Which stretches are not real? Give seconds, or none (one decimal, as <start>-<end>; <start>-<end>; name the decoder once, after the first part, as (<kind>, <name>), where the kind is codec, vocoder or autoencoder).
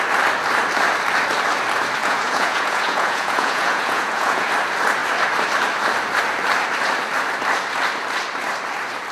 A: 2.0-4.5 (vocoder, Vocos)